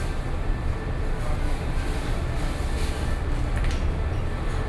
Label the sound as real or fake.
real